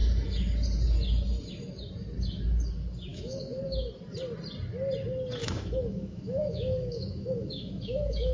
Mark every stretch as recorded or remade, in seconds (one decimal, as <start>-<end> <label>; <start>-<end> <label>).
0.0-3.1 recorded; 3.1-3.6 remade; 3.6-5.4 recorded; 5.4-8.3 remade